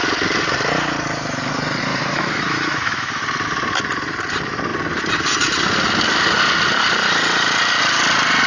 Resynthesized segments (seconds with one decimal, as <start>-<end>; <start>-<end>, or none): 1.9-3.2